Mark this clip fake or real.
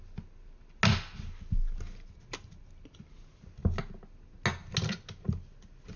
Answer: real